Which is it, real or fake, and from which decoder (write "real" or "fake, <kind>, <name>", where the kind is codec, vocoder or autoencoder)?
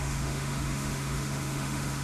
fake, autoencoder, DAC-VAE